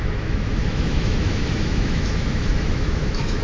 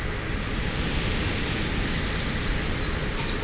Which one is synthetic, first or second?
first